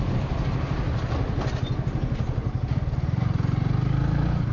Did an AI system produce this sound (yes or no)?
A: no